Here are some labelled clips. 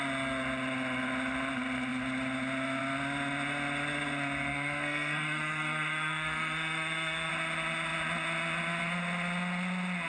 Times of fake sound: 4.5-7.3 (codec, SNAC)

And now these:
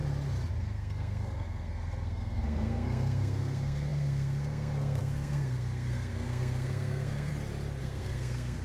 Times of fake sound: 0.6-7.3 (codec, SNAC); 7.8-8.6

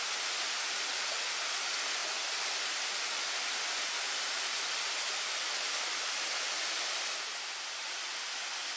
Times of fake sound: none

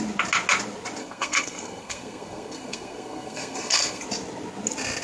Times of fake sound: 1.0-4.0 (codec, SNAC)